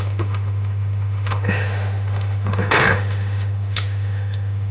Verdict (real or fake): fake